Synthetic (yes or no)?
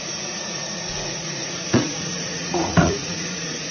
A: yes